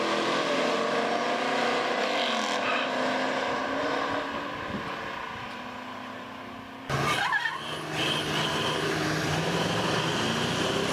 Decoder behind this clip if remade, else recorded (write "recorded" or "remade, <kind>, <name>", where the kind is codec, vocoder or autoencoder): recorded